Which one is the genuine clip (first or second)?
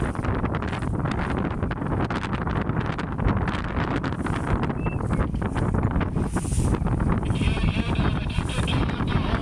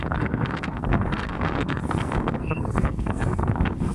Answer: first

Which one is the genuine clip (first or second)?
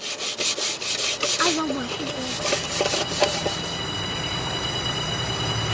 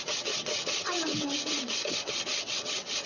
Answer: first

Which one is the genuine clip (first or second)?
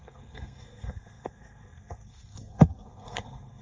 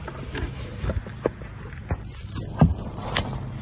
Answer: second